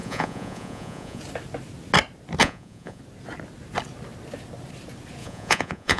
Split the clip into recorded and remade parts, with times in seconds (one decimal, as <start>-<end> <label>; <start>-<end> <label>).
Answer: 0.0-1.2 remade; 1.2-2.4 recorded; 2.4-3.0 remade; 3.0-5.2 recorded; 5.2-6.0 remade